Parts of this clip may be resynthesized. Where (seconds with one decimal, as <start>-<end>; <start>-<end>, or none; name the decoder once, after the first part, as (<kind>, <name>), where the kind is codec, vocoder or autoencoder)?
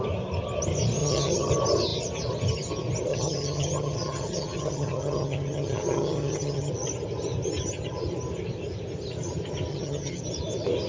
1.0-1.5 (vocoder, HiFi-GAN); 3.1-6.7; 9.7-10.2